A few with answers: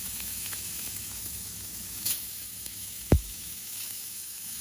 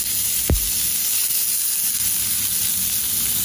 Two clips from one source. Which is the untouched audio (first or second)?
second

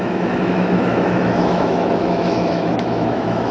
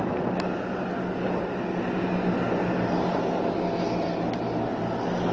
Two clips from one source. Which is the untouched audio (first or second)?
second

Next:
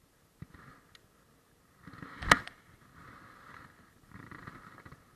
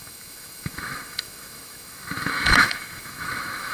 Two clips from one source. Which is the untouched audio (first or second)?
first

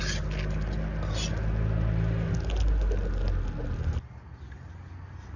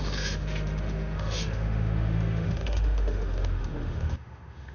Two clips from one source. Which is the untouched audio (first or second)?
first